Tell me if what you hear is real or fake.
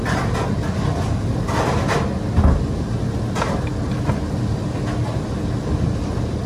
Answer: real